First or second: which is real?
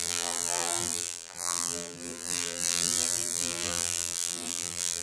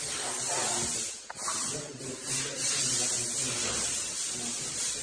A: second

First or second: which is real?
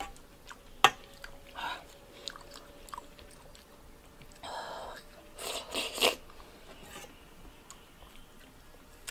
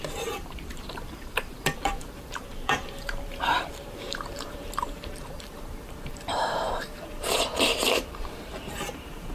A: first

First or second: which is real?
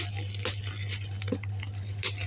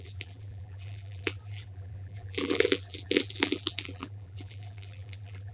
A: first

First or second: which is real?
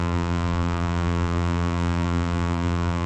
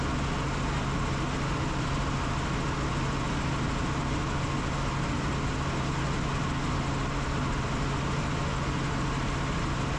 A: second